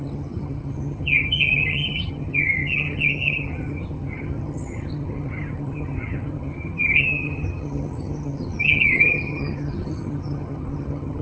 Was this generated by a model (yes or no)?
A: yes